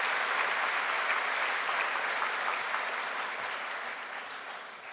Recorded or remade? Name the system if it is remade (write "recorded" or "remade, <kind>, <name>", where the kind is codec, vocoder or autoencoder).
recorded